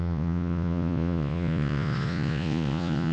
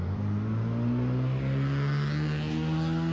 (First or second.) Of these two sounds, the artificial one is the first